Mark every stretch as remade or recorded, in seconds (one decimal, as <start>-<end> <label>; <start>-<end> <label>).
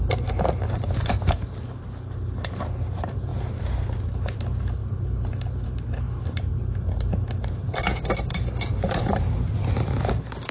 0.0-10.5 remade